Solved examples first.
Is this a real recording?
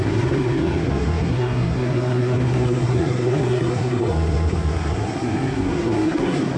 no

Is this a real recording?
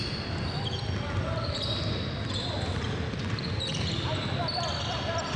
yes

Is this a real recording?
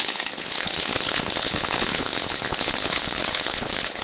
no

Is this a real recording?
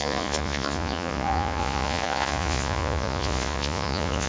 no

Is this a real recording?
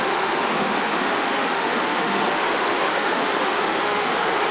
no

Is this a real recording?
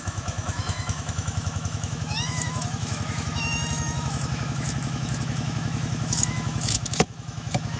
no